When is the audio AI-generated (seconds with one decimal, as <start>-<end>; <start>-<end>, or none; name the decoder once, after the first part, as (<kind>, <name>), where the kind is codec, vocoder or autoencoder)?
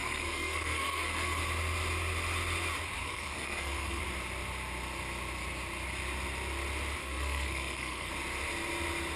0.0-1.4 (codec, SNAC); 3.0-4.0; 7.0-8.1